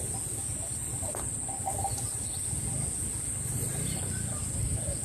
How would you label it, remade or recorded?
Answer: recorded